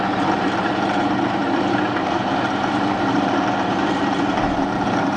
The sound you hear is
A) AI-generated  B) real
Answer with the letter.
A